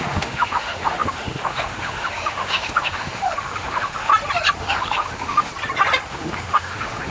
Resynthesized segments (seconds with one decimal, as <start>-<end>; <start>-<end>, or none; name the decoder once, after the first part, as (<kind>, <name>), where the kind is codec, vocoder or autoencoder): 0.0-4.1 (autoencoder, DAC-VAE); 4.6-5.5; 6.1-7.1